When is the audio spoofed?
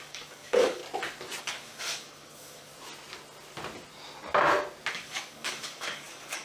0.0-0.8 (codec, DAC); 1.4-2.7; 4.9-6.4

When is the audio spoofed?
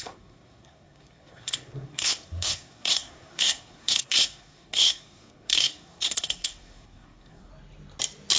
0.0-7.5 (codec, SNAC)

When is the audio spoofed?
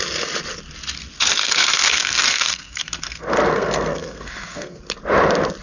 1.4-4.8 (codec, SNAC)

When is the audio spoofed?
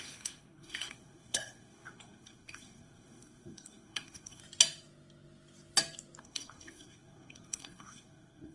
0.0-4.4 (codec, SNAC); 6.2-8.5